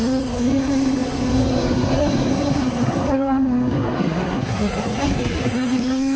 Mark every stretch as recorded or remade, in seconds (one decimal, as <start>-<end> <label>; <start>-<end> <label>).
0.0-6.2 remade